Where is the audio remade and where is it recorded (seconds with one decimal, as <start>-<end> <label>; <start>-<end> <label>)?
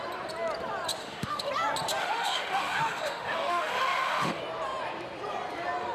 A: 0.0-1.0 recorded; 1.0-1.5 remade; 1.5-2.0 recorded; 2.0-4.4 remade; 4.4-5.9 recorded